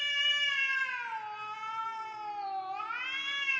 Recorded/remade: recorded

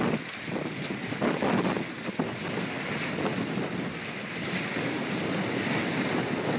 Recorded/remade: recorded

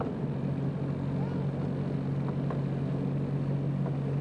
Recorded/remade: recorded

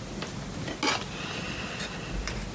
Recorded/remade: recorded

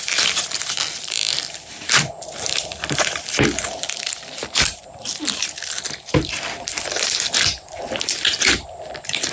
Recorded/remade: remade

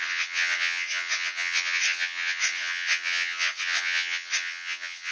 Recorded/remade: remade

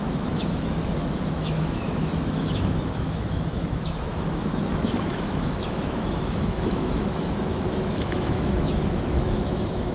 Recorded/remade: remade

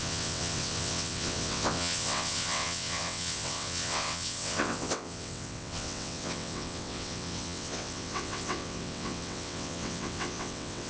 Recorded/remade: remade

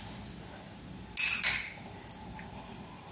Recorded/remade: recorded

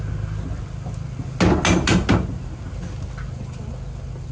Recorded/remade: recorded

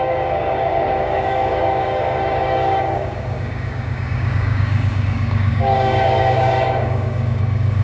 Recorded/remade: remade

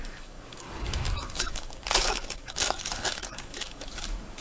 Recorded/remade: remade